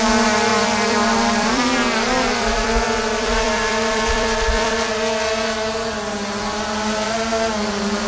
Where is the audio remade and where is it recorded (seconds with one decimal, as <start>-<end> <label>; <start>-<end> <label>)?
0.0-0.5 recorded; 0.5-4.9 remade; 4.9-8.1 recorded